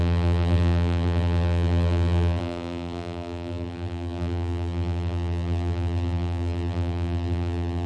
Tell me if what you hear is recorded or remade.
remade